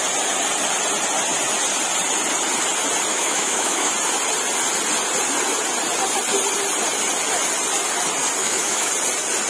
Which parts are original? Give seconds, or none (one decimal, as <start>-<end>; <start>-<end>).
0.0-3.1; 3.9-8.4; 8.9-9.5